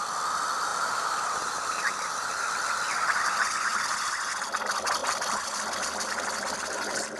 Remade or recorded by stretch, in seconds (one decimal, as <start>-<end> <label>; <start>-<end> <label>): 0.0-0.7 recorded; 0.7-2.5 remade; 2.5-7.2 recorded